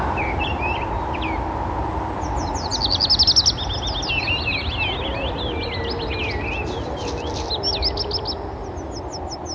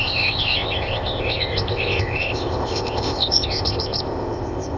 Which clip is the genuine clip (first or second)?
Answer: first